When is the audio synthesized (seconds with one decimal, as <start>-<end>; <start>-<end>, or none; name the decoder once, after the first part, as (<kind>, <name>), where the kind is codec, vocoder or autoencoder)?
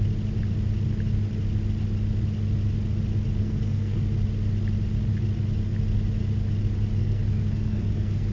3.4-4.0 (codec, SNAC); 7.0-8.3